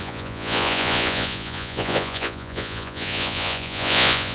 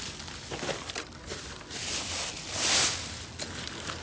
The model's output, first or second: first